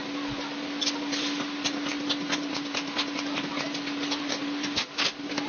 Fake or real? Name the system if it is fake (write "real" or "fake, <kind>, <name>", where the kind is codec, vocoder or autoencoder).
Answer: real